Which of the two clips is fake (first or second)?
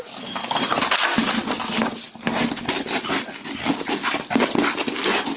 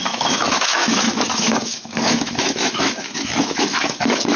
second